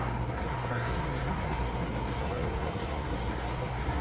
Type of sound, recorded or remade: remade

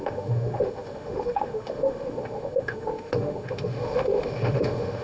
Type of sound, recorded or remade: remade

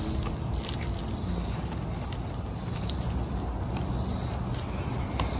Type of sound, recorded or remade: recorded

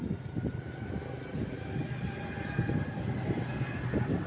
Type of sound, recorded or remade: recorded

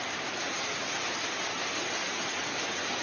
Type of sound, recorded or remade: recorded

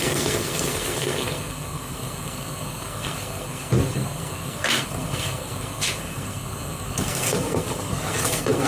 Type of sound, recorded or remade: remade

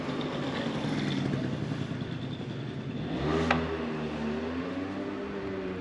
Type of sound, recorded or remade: recorded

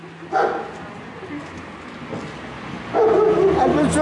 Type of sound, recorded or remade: recorded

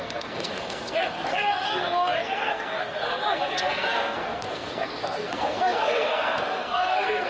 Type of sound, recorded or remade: remade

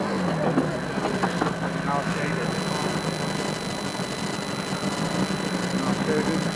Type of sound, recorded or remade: recorded